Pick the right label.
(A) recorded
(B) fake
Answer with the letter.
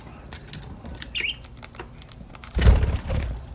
A